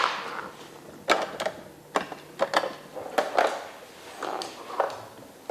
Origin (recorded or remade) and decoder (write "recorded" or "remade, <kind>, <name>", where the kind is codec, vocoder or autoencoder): recorded